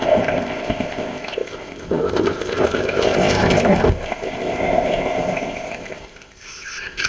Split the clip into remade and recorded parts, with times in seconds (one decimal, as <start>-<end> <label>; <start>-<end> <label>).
0.0-7.1 remade